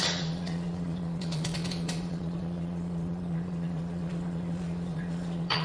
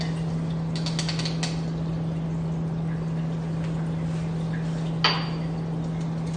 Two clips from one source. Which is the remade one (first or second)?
first